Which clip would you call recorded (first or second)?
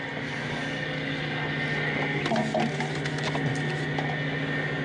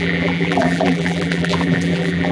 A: first